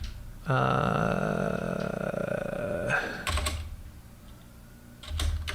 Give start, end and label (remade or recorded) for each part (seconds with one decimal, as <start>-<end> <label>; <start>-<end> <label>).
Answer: 0.0-2.2 recorded; 2.2-3.3 remade; 3.3-5.5 recorded